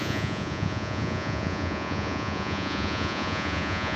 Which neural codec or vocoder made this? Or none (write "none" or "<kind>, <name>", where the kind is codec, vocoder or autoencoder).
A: vocoder, Vocos